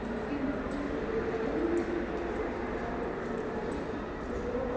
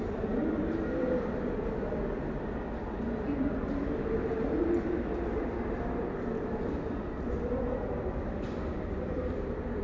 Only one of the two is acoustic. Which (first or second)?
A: first